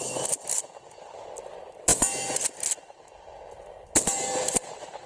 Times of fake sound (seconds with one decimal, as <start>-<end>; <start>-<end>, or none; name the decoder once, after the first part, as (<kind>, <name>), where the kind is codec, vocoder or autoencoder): 0.0-1.9 (vocoder, BigVGAN v2)